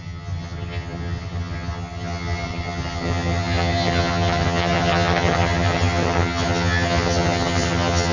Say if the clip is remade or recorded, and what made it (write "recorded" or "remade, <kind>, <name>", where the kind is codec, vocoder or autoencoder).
remade, vocoder, HiFi-GAN